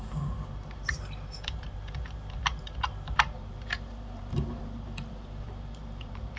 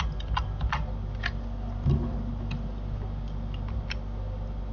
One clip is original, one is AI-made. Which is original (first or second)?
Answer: second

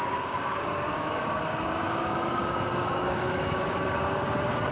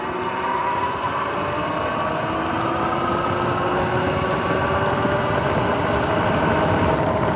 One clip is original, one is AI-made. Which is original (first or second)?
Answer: second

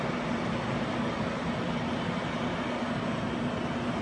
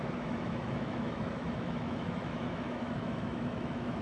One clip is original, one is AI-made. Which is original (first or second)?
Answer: first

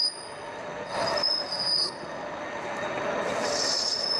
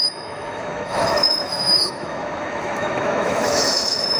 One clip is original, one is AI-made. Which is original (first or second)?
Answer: first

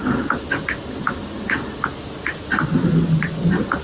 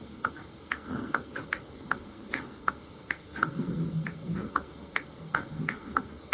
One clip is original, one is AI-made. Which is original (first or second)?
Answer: first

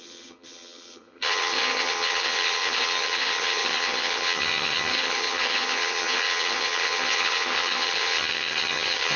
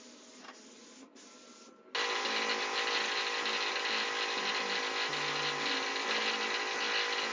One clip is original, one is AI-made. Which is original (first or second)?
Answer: second